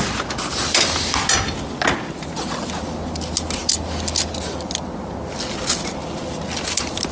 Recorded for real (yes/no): yes